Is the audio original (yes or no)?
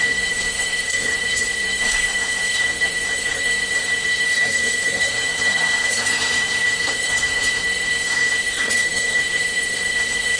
no